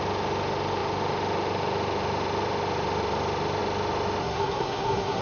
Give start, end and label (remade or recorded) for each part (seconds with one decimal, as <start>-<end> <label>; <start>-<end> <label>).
0.0-4.2 recorded; 4.2-5.2 remade